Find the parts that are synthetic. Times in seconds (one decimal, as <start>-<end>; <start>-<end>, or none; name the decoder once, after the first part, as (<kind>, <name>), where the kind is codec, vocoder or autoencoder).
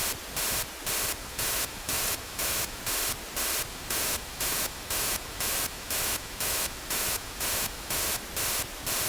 1.2-2.8 (autoencoder, DAC-VAE); 3.7-8.2